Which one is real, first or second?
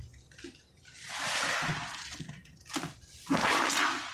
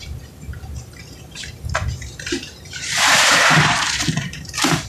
first